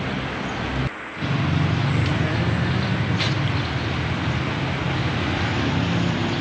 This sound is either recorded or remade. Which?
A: recorded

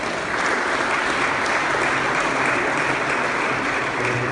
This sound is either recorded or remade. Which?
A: recorded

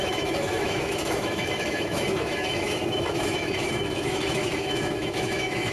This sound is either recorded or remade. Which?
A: remade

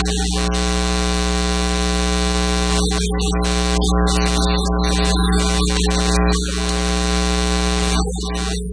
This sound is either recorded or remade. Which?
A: recorded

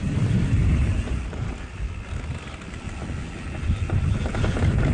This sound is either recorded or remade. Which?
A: recorded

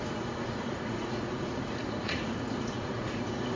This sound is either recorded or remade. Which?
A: remade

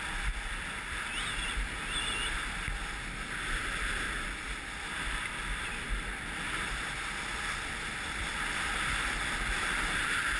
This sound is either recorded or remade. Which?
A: recorded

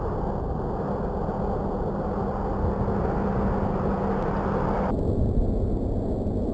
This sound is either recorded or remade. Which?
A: recorded